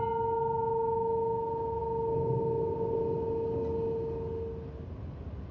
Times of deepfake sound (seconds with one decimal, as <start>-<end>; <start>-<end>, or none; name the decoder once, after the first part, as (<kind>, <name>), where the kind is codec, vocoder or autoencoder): none